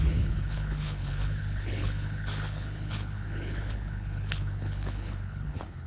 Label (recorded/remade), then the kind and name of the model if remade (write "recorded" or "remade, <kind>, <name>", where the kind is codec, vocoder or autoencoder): remade, codec, HILCodec